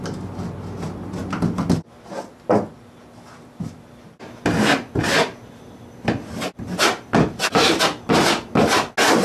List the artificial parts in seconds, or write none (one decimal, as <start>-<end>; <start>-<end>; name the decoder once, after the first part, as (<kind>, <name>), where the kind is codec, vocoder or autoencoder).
none